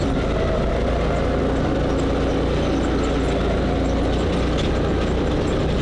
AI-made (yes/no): no